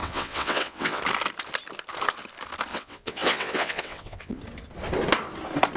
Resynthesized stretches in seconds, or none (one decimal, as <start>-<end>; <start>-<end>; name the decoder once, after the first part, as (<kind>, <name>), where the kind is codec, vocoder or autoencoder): 0.0-1.0 (vocoder, WaveNeXt); 2.7-4.4